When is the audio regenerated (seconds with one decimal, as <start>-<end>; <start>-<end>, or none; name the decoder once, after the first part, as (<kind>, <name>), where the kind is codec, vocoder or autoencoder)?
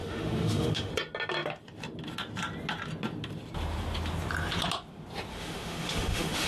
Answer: 0.0-0.9 (autoencoder, DAC-VAE); 5.3-6.5